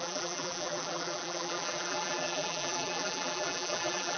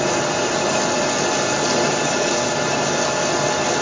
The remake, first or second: first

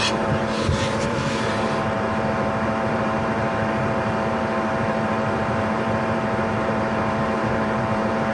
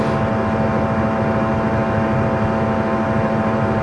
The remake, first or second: first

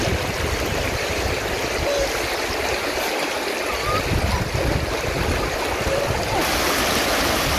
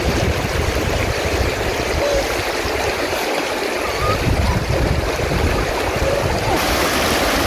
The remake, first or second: second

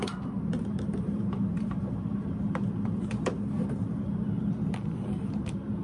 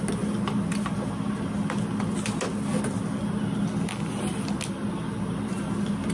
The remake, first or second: first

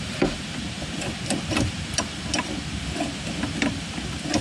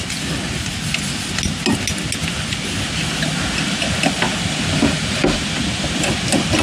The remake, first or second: first